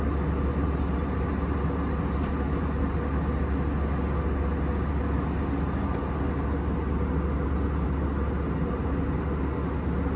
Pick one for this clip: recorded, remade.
recorded